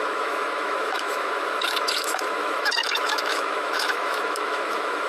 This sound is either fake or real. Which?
fake